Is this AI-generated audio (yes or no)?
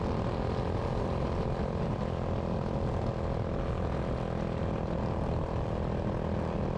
no